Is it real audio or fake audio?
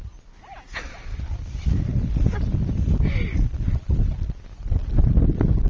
real